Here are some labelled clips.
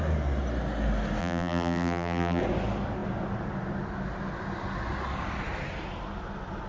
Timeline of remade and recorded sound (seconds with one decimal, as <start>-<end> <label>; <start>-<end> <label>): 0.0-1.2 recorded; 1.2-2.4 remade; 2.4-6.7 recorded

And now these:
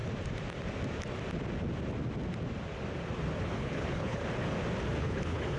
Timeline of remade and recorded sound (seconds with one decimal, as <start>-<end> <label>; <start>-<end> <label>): 0.0-3.4 recorded; 3.4-4.2 remade; 4.2-5.0 recorded; 5.0-5.6 remade

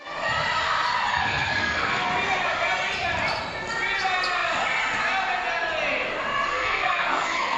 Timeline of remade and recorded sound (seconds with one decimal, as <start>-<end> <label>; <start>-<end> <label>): 0.0-1.1 recorded; 1.1-2.1 remade; 2.1-6.5 recorded; 6.5-7.6 remade

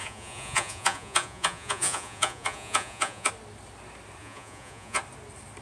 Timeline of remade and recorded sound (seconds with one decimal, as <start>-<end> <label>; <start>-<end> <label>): 0.0-3.3 remade; 3.3-4.2 recorded; 4.2-5.0 remade; 5.0-5.6 recorded

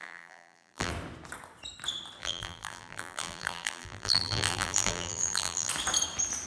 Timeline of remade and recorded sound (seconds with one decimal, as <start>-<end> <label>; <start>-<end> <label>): 0.0-0.9 remade; 0.9-2.2 recorded; 2.2-5.7 remade; 5.7-6.5 recorded

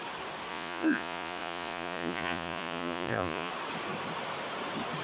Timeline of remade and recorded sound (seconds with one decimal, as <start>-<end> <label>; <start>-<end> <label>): 0.0-0.5 recorded; 0.5-3.5 remade; 3.5-5.0 recorded

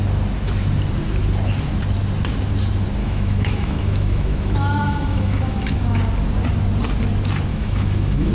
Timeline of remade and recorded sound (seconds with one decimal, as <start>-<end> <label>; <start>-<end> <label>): 0.0-3.0 recorded; 3.0-6.0 remade; 6.0-7.5 recorded; 7.5-8.3 remade

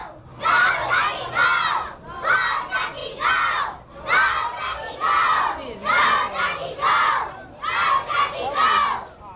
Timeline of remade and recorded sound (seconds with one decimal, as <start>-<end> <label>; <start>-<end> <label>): 0.0-9.4 recorded